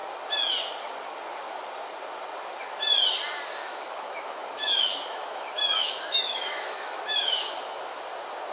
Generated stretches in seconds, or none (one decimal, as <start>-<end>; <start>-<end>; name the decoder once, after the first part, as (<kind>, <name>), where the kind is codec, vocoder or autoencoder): 3.6-8.0 (autoencoder, DAC-VAE)